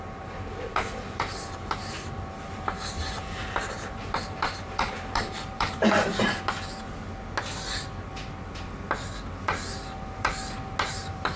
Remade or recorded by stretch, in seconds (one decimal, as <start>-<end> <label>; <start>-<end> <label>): 0.0-6.1 remade; 6.1-10.9 recorded; 10.9-11.4 remade